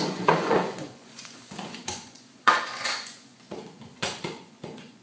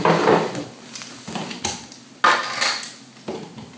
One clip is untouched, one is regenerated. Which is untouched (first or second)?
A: second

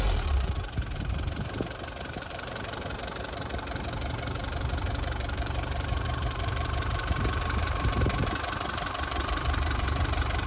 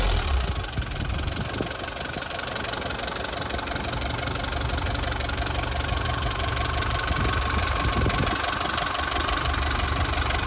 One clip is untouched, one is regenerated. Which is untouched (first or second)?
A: second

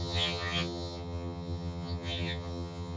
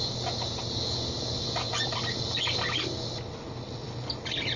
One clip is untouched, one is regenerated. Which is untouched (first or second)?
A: second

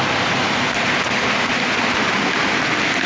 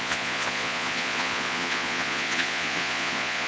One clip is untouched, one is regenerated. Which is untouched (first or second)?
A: first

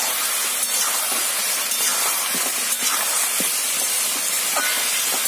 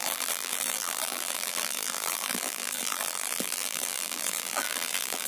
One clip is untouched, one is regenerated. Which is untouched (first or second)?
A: first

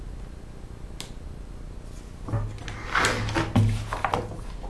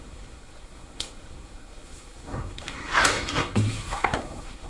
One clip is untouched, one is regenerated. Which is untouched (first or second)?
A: first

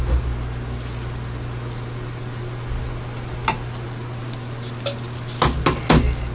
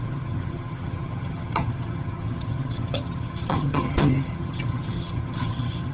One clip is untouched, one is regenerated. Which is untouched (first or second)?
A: first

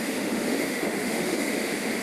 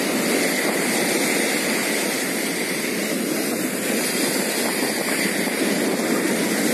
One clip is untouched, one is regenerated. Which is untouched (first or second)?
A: second